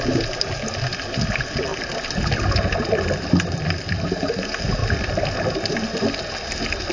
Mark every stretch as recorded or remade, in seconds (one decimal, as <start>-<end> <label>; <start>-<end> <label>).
0.0-1.7 recorded; 1.7-4.0 remade; 4.0-4.8 recorded; 4.8-6.2 remade; 6.2-6.9 recorded